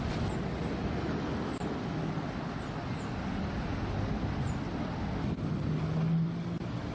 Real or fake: real